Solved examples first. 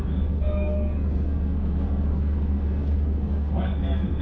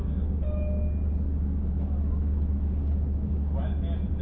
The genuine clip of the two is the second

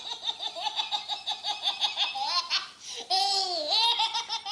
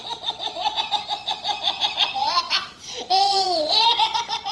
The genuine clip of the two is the first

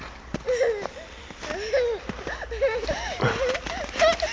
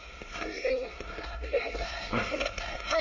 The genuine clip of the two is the first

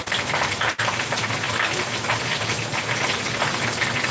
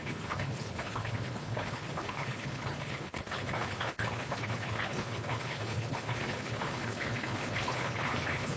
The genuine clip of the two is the first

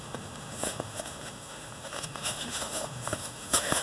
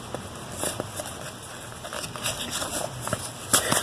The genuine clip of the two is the second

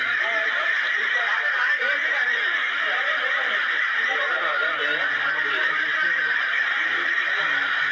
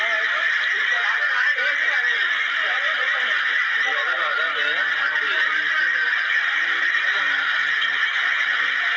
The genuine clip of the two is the second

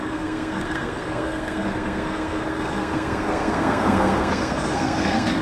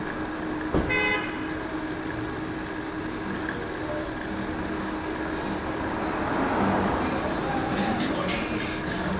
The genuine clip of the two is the second